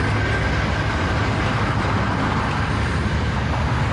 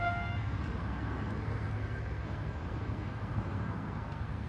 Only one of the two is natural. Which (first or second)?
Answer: first